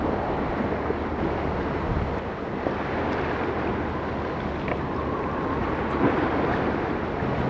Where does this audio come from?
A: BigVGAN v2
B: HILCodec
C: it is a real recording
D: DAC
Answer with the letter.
C